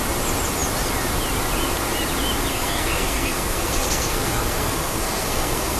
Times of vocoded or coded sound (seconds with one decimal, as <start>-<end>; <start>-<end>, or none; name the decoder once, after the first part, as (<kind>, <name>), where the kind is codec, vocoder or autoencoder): 2.5-5.8 (codec, SNAC)